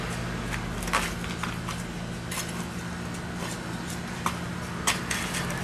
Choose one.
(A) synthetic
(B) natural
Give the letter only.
B